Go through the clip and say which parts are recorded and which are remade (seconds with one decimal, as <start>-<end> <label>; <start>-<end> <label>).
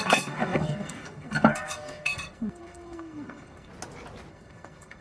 0.0-3.7 remade; 3.7-4.3 recorded; 4.3-5.0 remade